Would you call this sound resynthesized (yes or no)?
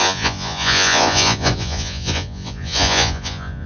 yes